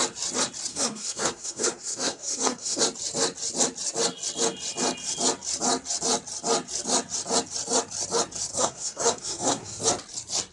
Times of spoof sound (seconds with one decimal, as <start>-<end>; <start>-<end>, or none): 0.7-2.8; 8.5-9.8